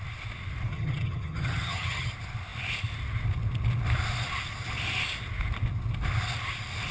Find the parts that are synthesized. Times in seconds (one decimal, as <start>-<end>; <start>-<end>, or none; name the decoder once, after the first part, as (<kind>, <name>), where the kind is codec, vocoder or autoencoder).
0.7-2.1 (vocoder, HiFi-GAN)